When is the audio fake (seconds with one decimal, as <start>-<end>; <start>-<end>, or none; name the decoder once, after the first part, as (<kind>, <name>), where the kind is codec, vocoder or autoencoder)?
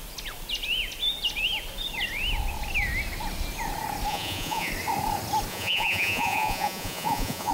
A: 4.1-4.7 (vocoder, Vocos); 5.5-7.5